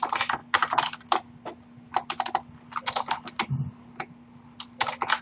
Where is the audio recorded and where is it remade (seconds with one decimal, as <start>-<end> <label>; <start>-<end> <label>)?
0.0-5.2 recorded